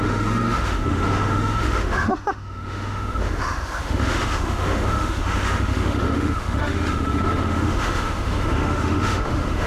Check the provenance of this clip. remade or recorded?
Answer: remade